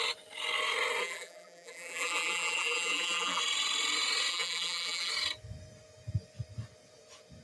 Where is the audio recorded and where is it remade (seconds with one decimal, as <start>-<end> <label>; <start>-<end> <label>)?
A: 0.0-1.0 recorded; 1.0-3.4 remade; 3.4-4.3 recorded; 4.3-5.1 remade; 5.1-7.4 recorded